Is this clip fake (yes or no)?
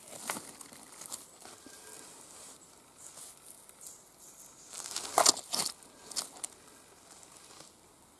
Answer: no